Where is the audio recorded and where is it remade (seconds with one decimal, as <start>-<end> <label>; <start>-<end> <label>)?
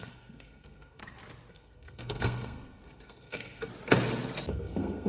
0.0-1.0 remade; 1.0-1.5 recorded; 1.5-3.7 remade; 3.7-4.5 recorded; 4.5-5.1 remade